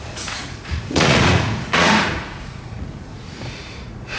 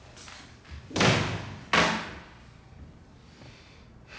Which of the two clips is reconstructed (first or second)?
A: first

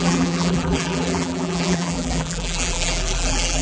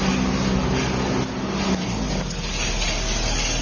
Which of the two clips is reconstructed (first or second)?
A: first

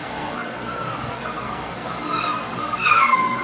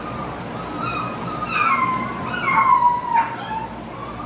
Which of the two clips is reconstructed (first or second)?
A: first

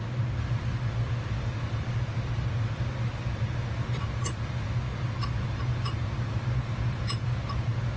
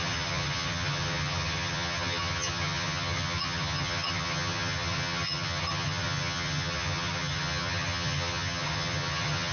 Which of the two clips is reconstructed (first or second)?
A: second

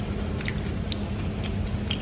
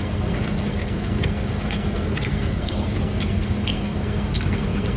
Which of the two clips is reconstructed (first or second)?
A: second